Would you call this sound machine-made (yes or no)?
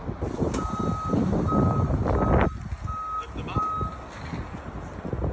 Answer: no